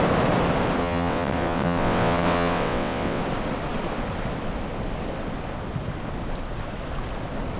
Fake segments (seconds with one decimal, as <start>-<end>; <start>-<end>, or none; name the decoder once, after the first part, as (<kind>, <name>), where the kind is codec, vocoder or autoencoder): 0.8-3.2 (vocoder, WaveNeXt)

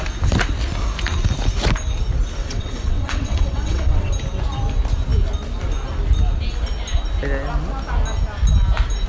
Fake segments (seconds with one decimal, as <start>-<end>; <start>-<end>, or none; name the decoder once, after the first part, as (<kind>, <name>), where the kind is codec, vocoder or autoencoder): 2.4-4.1 (vocoder, WaveNeXt)

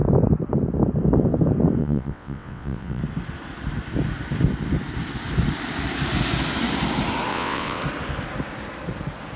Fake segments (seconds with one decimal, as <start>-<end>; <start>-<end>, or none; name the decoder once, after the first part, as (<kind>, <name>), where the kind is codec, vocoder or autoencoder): 1.8-3.0 (vocoder, WaveNeXt); 7.3-7.8

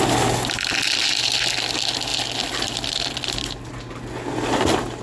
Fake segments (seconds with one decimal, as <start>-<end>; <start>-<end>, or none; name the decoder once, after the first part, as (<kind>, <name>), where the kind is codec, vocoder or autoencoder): none

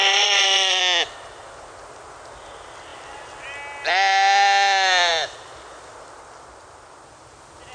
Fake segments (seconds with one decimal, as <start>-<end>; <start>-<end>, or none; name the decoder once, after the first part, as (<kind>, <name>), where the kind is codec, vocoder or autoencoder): 0.0-0.8 (vocoder, WaveNeXt)